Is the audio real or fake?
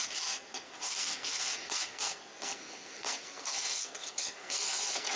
fake